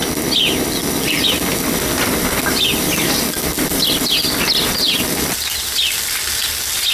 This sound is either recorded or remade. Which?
recorded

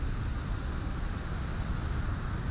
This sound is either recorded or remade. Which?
recorded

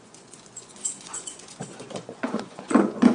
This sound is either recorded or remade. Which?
remade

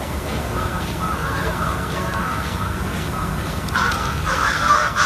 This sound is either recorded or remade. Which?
remade